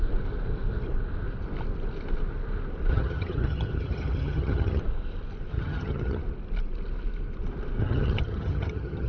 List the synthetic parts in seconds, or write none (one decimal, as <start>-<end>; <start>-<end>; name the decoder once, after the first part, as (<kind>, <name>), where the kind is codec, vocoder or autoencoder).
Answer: 2.9-4.8 (vocoder, HiFi-GAN); 5.5-6.2; 7.8-9.1

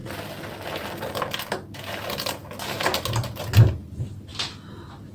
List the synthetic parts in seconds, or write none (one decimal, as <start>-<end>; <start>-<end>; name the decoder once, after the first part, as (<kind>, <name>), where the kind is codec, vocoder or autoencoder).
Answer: none

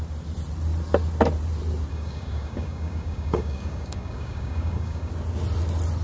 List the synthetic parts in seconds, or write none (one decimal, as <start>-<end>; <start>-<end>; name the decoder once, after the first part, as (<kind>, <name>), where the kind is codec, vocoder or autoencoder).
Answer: 1.9-5.1 (codec, DAC)

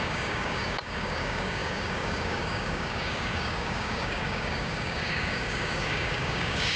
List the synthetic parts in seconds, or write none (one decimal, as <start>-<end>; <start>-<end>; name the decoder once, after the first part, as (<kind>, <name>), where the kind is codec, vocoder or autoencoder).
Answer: 0.0-6.8 (codec, DAC)

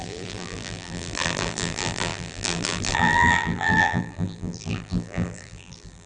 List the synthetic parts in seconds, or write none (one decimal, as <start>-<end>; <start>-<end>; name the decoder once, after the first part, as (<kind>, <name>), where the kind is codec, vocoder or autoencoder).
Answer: 0.0-6.1 (vocoder, BigVGAN v2)